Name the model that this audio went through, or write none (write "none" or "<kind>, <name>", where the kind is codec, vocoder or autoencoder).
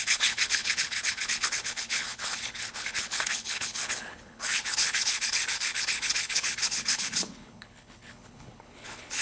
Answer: codec, HILCodec